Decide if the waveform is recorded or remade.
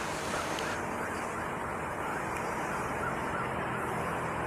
recorded